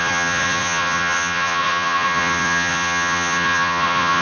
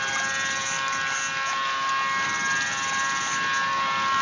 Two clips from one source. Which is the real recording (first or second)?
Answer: second